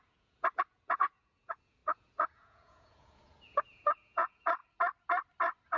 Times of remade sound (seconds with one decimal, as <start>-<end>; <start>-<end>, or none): 0.0-4.6

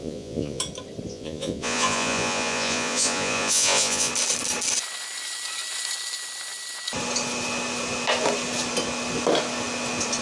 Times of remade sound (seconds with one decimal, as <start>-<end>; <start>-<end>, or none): 0.0-0.6; 1.1-4.1

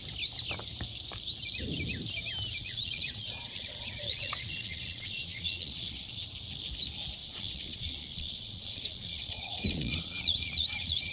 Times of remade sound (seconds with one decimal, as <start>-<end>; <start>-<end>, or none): 2.6-6.2; 7.2-11.1

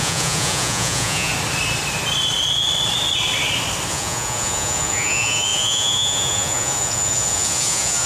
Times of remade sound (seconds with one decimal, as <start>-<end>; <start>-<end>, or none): 0.0-1.3; 3.9-8.1

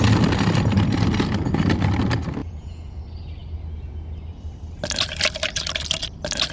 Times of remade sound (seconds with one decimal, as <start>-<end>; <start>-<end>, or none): 2.4-3.0